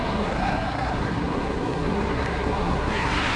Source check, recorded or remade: remade